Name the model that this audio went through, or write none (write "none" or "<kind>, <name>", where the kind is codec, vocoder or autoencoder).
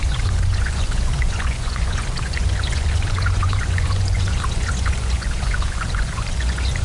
vocoder, Vocos